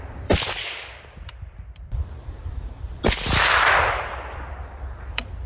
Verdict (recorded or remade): remade